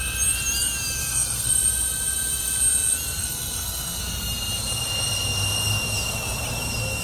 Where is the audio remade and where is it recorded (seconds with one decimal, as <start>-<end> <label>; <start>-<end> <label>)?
0.0-1.0 recorded; 1.0-1.5 remade; 1.5-3.2 recorded; 3.2-4.0 remade; 4.0-7.0 recorded